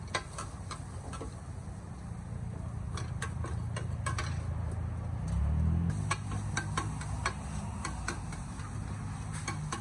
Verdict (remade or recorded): recorded